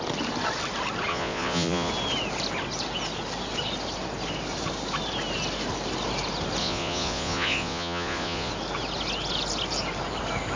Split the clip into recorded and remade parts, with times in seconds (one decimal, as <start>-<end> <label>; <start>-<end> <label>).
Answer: 0.0-1.1 recorded; 1.1-1.9 remade; 1.9-6.6 recorded; 6.6-8.5 remade; 8.5-10.6 recorded